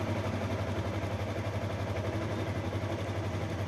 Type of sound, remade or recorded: recorded